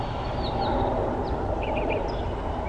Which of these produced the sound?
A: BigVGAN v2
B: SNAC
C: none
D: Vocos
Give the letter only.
A